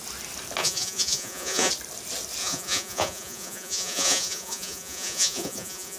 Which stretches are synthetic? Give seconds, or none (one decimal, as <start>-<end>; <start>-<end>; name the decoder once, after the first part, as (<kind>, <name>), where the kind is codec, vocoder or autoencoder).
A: 0.6-1.7 (vocoder, Vocos); 2.4-6.0